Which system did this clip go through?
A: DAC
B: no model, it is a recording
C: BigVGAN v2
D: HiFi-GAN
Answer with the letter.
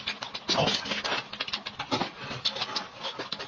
B